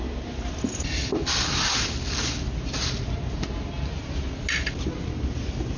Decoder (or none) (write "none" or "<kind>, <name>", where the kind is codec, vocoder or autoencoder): none